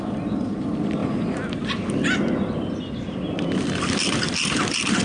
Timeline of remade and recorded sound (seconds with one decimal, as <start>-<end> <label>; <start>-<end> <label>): 0.0-1.0 remade; 1.0-4.0 recorded; 4.0-5.0 remade